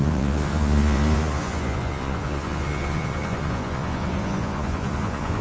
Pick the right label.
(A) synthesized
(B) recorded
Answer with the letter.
A